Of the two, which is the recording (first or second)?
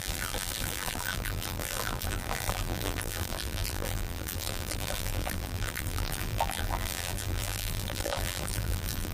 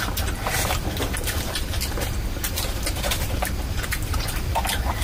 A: second